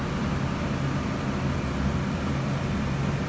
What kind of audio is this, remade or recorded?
recorded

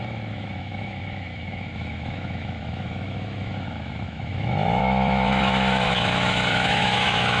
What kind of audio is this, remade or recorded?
remade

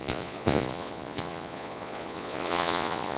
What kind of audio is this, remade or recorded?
remade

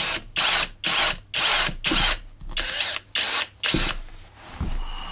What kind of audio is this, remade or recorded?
recorded